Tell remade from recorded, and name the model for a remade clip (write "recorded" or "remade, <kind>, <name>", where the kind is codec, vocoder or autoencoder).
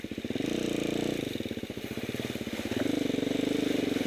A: recorded